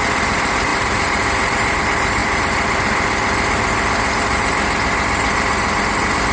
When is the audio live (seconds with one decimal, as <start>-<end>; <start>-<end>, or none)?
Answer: 0.0-6.3